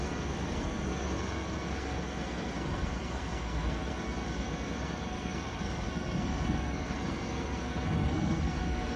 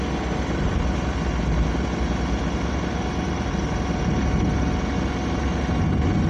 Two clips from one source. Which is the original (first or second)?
second